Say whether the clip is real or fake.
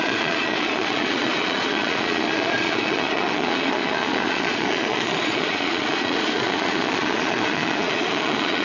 fake